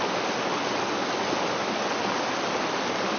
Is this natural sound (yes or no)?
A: yes